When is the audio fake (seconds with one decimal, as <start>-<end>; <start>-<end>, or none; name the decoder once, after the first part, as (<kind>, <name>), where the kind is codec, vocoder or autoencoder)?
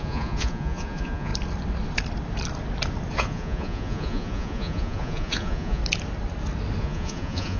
0.0-1.3 (vocoder, Vocos); 3.1-5.8; 6.8-7.6